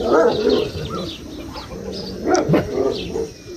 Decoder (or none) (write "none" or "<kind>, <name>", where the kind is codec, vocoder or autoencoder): none